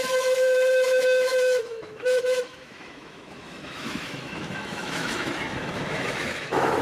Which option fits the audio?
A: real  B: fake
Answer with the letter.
B